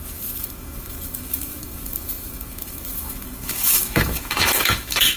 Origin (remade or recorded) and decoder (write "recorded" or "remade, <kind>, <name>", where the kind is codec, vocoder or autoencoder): remade, autoencoder, DAC-VAE